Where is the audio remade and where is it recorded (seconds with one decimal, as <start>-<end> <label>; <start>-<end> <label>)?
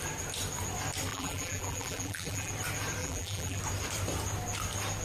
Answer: 0.0-1.1 recorded; 1.1-2.5 remade; 2.5-3.0 recorded; 3.0-3.6 remade; 3.6-5.0 recorded